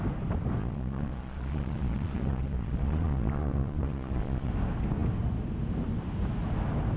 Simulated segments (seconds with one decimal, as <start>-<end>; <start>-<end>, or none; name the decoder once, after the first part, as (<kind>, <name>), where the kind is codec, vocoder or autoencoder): 0.6-4.5 (vocoder, Vocos)